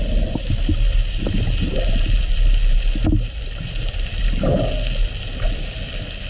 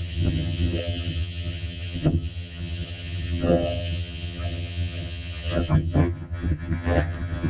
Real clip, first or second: first